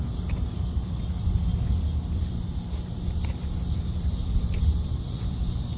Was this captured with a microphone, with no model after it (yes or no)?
no